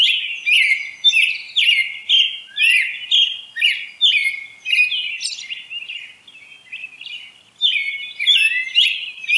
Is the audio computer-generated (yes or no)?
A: no